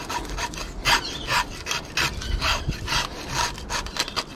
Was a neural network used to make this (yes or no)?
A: yes